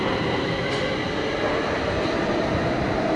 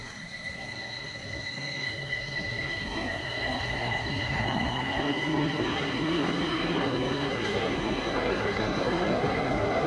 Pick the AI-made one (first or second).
second